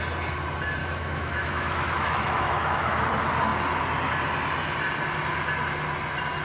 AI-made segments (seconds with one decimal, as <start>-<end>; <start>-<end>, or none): 0.8-3.0